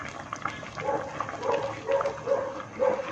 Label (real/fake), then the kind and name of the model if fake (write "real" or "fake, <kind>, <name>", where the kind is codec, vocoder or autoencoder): real